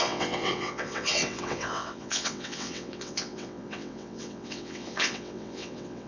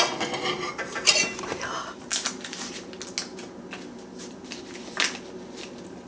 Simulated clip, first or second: first